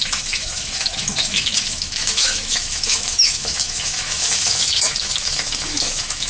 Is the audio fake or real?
fake